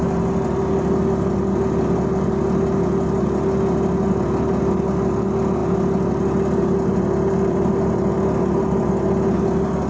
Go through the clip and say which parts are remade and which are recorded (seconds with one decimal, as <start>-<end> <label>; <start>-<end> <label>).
0.0-9.9 recorded